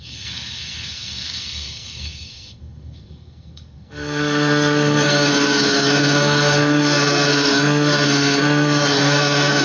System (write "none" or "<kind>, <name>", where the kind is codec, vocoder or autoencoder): codec, SNAC